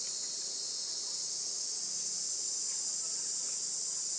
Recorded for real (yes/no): yes